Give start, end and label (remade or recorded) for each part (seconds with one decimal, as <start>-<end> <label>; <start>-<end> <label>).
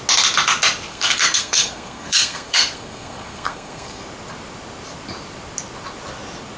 0.0-0.9 recorded; 0.9-4.0 remade; 4.0-6.6 recorded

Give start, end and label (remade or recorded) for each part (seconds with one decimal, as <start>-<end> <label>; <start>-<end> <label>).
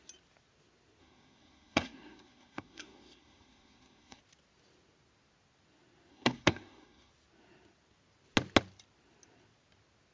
0.0-1.0 recorded; 1.0-4.2 remade; 4.2-6.1 recorded; 6.1-7.1 remade; 7.1-10.1 recorded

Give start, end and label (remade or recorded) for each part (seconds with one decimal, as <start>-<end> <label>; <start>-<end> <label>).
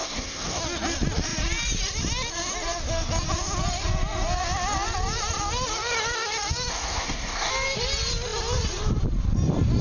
0.0-0.6 remade; 0.6-6.7 recorded; 6.7-7.5 remade; 7.5-9.8 recorded